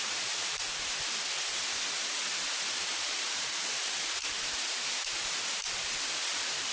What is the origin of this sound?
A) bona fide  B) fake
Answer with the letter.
B